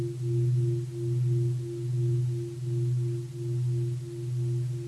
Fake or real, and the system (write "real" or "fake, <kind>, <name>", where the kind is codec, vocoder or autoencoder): real